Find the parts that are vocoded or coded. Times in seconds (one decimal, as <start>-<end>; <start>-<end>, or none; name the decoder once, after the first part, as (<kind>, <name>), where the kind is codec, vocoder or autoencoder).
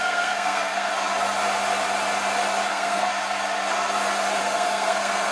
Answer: 0.0-0.9 (codec, SNAC); 2.7-3.1; 4.4-5.3